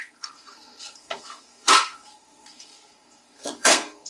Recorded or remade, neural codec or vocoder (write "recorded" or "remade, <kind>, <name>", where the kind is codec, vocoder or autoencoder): remade, codec, SNAC